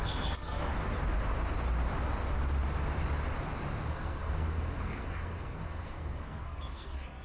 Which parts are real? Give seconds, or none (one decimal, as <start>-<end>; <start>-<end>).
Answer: 0.7-3.9